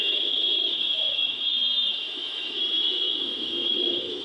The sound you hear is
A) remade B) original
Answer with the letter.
A